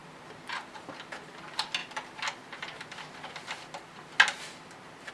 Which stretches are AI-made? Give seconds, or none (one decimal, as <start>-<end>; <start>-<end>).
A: none